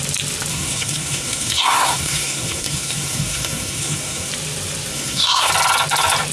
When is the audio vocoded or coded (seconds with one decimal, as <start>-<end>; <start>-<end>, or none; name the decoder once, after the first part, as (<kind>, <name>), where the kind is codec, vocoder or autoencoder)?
0.5-4.3 (codec, SNAC); 4.9-5.5